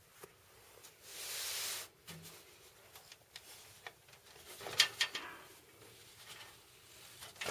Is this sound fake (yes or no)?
no